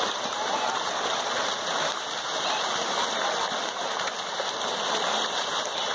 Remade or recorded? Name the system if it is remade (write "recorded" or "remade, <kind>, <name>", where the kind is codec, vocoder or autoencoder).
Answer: recorded